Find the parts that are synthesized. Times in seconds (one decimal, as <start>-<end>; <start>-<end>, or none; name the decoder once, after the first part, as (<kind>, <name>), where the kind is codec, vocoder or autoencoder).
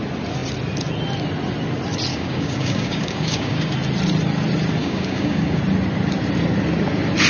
2.1-3.7 (codec, DAC); 4.8-5.6